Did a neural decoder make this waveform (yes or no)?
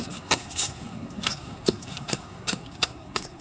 yes